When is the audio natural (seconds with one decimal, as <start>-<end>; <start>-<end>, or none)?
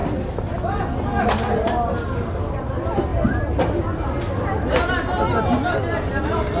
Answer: 0.0-6.6